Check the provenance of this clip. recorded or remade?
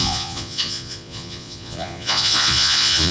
remade